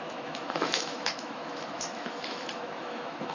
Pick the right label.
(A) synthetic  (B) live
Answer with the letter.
A